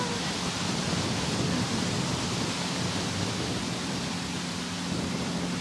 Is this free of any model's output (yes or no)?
yes